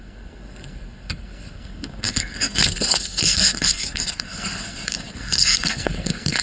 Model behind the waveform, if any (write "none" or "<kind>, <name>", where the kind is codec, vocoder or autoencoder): codec, SNAC